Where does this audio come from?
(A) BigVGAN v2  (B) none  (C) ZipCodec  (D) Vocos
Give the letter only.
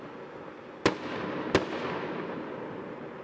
B